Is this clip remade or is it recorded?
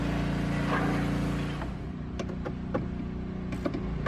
recorded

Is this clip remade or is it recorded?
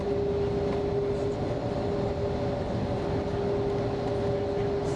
recorded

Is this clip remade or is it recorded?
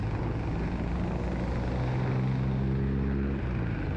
recorded